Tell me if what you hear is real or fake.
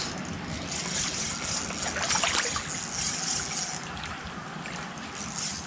real